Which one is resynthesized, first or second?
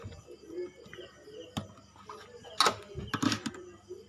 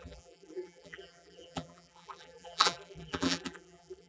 second